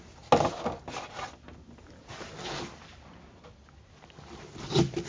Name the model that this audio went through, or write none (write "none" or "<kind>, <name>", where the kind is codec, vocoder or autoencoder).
none